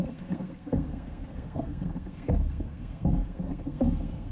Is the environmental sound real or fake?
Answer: fake